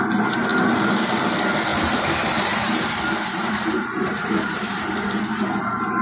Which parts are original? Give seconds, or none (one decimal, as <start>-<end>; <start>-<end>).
0.0-1.7; 4.9-6.0